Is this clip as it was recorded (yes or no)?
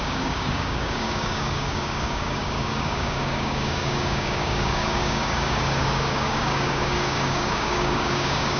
no